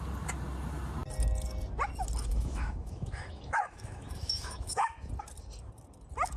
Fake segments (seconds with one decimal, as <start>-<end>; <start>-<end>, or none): 2.3-5.1